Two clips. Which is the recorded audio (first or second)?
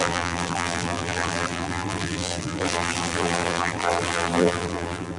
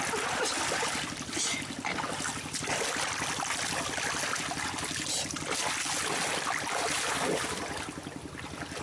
second